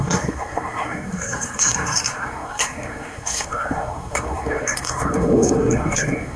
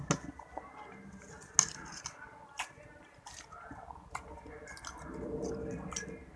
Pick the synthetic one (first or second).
first